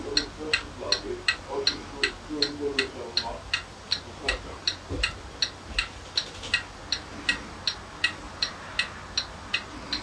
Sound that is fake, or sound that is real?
real